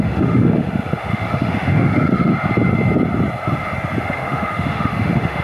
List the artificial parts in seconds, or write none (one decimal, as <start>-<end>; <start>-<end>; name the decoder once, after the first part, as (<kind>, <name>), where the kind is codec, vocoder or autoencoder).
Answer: 0.0-2.3 (autoencoder, DAC-VAE); 4.0-5.4

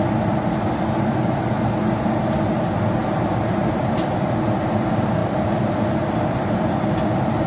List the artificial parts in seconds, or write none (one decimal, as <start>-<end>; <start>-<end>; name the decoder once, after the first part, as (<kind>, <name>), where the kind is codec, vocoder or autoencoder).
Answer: none

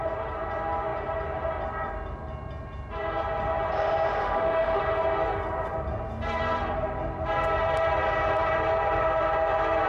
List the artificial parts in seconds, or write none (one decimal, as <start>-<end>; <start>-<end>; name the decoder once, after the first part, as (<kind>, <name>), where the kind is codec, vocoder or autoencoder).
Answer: 4.2-4.8 (autoencoder, DAC-VAE)

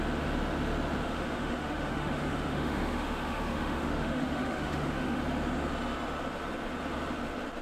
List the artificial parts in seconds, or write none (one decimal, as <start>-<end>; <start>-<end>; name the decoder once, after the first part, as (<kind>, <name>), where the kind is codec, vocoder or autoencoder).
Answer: 1.0-5.2 (autoencoder, DAC-VAE)

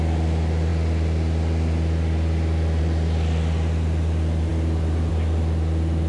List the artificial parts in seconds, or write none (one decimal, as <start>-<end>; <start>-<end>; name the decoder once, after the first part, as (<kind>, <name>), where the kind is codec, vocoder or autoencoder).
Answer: none